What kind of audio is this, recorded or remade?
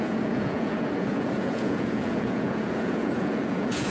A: remade